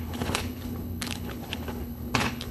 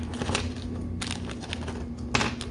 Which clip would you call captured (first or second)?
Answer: second